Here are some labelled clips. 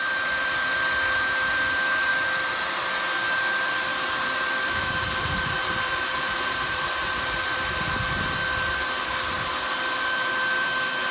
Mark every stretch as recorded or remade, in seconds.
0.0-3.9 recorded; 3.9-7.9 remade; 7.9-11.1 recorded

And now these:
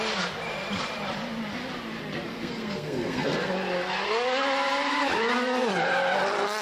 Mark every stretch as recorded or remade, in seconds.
0.0-2.3 recorded; 2.3-3.5 remade; 3.5-6.6 recorded

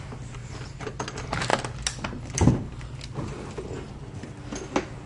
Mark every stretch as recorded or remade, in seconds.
0.0-5.1 recorded

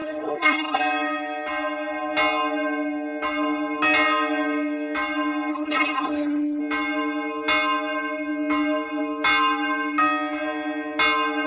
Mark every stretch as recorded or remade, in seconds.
0.0-0.8 remade; 0.8-5.5 recorded; 5.5-6.6 remade; 6.6-11.5 recorded